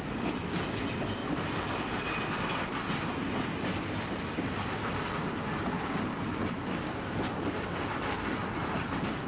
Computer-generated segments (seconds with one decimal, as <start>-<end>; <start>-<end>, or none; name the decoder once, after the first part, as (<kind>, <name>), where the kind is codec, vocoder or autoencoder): none